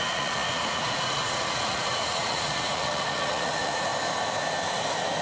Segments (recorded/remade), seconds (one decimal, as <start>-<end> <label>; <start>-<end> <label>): 0.0-3.9 remade; 3.9-5.2 recorded